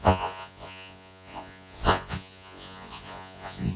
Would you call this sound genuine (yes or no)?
no